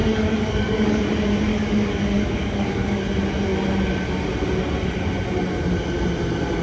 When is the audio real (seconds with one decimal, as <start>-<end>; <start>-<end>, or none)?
1.0-1.5; 3.0-6.6